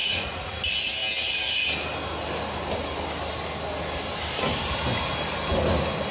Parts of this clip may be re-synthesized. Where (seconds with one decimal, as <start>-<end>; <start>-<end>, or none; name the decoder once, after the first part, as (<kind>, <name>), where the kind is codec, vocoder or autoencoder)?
0.0-0.6 (vocoder, Vocos)